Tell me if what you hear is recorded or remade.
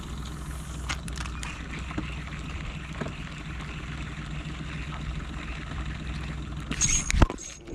recorded